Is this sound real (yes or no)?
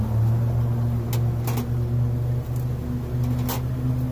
yes